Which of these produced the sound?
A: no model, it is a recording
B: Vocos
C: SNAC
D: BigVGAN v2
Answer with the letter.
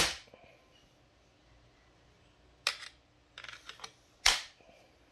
A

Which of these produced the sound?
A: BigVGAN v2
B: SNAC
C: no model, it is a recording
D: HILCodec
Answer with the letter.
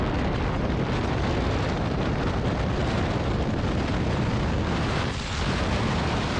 C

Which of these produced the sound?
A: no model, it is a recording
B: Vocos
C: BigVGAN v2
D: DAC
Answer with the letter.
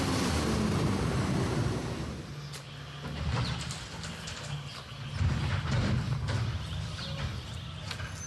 A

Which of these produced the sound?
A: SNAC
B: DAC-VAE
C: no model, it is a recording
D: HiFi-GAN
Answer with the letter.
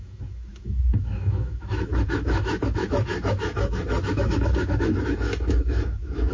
B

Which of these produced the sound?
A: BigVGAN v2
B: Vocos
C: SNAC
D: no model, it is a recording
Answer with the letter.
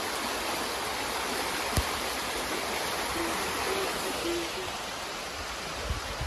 D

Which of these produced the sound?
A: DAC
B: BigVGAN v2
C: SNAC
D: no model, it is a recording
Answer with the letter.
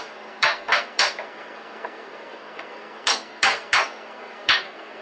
C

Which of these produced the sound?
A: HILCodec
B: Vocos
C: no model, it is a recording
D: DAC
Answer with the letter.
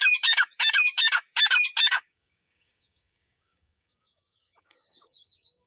D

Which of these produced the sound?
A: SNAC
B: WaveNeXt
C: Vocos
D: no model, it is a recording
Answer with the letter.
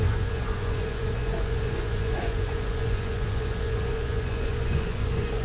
C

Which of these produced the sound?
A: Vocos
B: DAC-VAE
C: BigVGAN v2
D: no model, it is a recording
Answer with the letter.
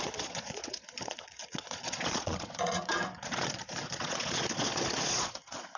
A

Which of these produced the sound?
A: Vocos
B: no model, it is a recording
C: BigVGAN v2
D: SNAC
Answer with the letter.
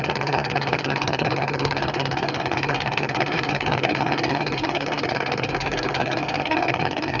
D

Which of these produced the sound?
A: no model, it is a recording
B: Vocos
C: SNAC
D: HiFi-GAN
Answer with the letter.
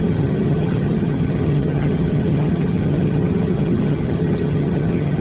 D